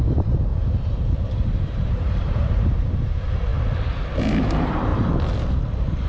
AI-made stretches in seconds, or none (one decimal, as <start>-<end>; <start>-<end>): 0.0-3.5; 4.4-4.9; 5.5-6.1